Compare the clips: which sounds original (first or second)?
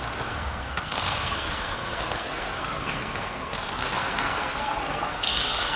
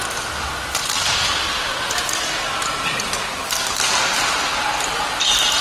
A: second